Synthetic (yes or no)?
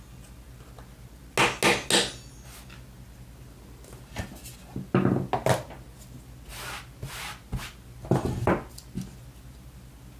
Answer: no